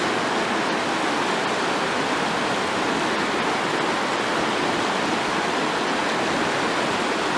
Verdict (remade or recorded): recorded